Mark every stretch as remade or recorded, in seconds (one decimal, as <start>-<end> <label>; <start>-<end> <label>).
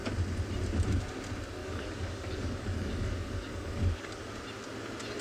0.0-1.6 recorded; 1.6-4.2 remade; 4.2-5.2 recorded